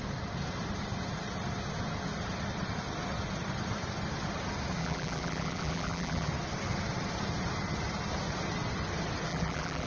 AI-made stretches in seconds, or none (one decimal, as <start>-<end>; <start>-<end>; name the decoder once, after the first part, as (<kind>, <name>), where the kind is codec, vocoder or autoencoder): 4.8-6.3 (vocoder, BigVGAN v2); 9.3-9.9